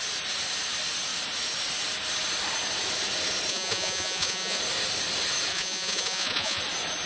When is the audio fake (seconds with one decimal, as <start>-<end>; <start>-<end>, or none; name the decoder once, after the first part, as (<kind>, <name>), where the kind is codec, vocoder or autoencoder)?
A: 3.5-4.6 (vocoder, Vocos); 5.5-6.6